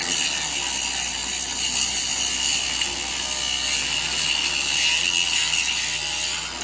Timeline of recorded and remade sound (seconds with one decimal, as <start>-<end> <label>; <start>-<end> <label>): 0.0-6.6 recorded